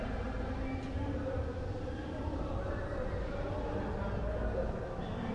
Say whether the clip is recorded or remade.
recorded